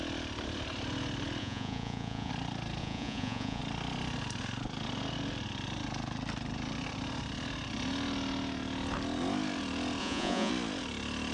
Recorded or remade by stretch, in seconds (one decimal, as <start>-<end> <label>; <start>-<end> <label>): 0.0-1.4 recorded; 1.4-2.3 remade; 2.3-2.8 recorded; 2.8-3.6 remade; 3.6-10.0 recorded; 10.0-10.5 remade; 10.5-11.3 recorded